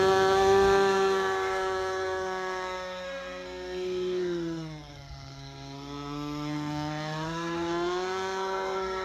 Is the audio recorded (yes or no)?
no